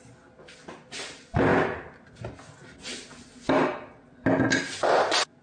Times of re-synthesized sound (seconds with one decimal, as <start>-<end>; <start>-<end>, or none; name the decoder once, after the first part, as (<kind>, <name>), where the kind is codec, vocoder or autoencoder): none